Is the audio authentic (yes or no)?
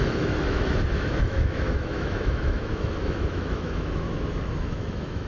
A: no